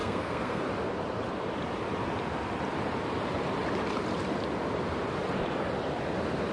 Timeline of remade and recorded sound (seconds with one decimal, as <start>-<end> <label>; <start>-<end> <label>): 0.0-0.6 remade; 0.6-6.5 recorded